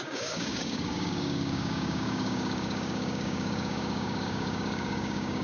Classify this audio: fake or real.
fake